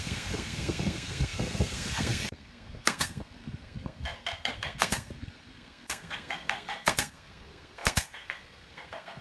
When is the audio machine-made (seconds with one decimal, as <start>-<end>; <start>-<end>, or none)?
0.0-9.2